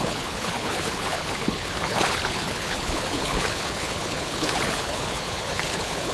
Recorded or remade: remade